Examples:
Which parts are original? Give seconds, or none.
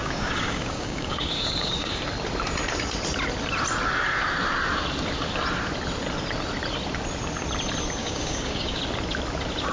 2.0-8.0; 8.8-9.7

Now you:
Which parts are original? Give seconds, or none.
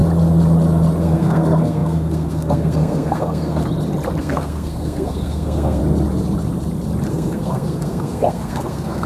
0.0-1.0; 3.6-4.2; 5.8-7.1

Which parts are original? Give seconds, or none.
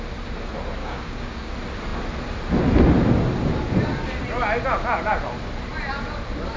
0.0-0.8; 1.5-6.6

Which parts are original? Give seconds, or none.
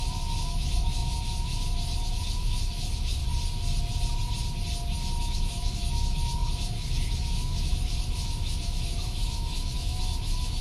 3.2-5.2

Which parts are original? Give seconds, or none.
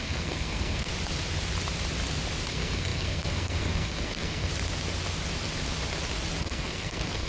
0.9-2.5; 4.5-6.4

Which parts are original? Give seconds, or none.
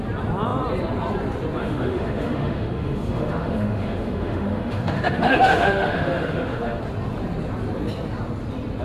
0.0-1.6; 6.8-8.8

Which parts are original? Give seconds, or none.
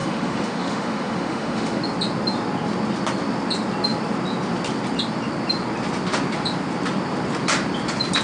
1.8-8.2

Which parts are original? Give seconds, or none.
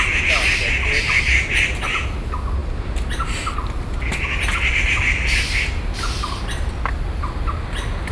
0.0-8.1